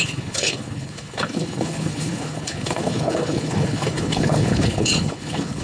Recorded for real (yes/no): no